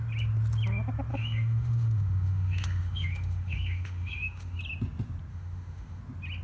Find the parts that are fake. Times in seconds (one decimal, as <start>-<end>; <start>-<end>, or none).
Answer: 1.1-4.6; 5.3-6.0